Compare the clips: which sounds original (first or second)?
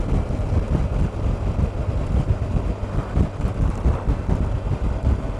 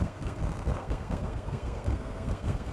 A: first